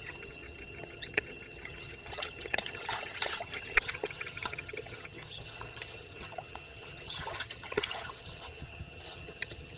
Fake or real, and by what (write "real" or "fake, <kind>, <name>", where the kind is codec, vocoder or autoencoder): fake, vocoder, HiFi-GAN